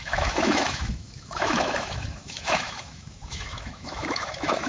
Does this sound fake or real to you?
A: fake